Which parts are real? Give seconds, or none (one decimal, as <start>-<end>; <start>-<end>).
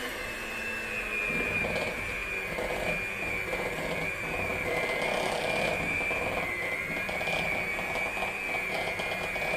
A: 0.0-4.5; 8.0-9.6